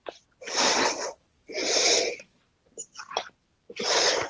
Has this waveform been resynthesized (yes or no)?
no